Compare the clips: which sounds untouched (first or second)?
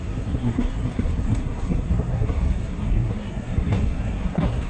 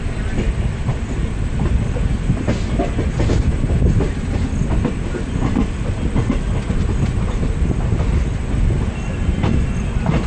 second